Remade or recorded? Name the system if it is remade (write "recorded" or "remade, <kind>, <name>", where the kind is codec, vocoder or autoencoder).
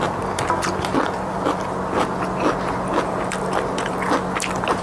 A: recorded